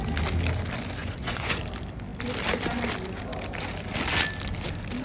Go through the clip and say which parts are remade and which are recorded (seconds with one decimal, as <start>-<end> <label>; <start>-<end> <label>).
0.0-1.0 recorded; 1.0-1.6 remade; 1.6-5.0 recorded